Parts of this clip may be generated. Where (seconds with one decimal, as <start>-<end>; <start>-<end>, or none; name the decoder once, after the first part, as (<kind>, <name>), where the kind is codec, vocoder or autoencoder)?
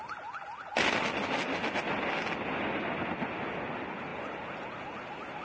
none